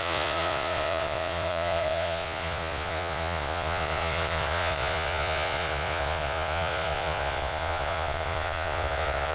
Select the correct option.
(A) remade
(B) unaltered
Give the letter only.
A